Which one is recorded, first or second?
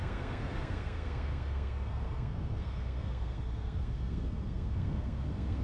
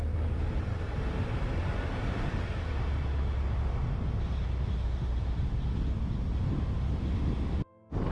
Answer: second